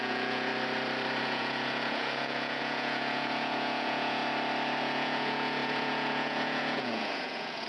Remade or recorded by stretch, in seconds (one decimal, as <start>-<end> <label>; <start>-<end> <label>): 0.0-0.5 remade; 0.5-1.2 recorded; 1.2-4.2 remade; 4.2-4.8 recorded; 4.8-7.7 remade